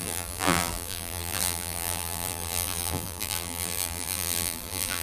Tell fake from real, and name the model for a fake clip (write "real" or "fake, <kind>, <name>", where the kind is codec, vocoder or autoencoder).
fake, vocoder, BigVGAN v2